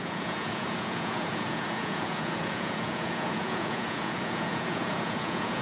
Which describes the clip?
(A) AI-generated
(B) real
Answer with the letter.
A